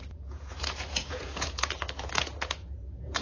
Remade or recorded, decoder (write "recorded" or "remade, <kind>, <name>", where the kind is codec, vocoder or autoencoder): remade, vocoder, Vocos